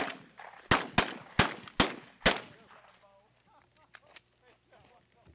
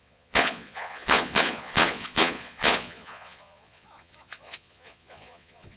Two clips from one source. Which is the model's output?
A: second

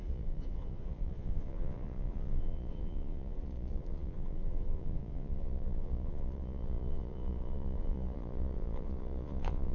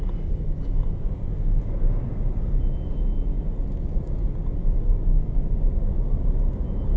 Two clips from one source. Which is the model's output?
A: first